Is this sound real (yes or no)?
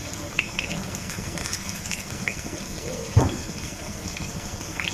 no